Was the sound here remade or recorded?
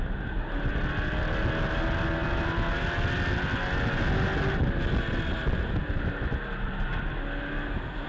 recorded